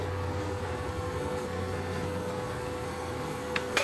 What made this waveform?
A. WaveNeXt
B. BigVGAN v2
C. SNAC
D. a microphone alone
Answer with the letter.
C